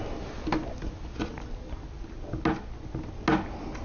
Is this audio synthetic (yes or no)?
no